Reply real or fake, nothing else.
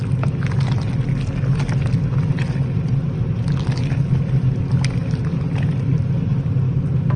real